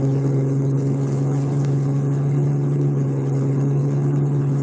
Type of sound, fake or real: fake